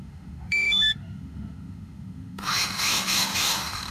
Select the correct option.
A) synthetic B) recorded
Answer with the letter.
A